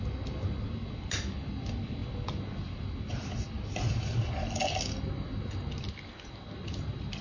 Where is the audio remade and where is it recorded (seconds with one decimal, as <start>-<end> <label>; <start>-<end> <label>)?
0.0-7.2 recorded